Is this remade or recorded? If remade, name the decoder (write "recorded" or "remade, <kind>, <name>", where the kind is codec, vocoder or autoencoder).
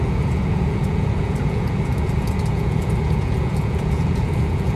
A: remade, vocoder, Vocos